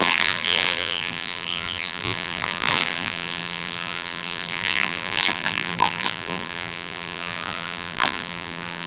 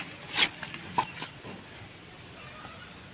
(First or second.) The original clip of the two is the second